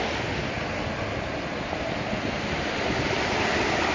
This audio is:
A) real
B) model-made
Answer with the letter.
A